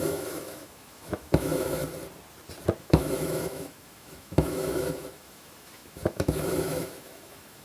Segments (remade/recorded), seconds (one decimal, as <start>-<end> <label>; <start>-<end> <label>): 0.0-1.8 remade; 1.8-2.8 recorded; 2.8-7.6 remade